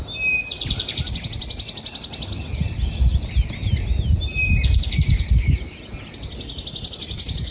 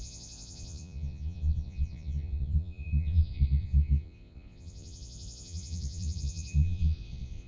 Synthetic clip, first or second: second